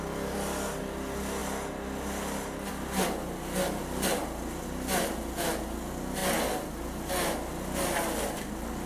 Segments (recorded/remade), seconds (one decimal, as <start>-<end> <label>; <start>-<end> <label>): 0.0-8.9 recorded